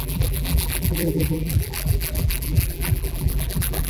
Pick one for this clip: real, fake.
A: fake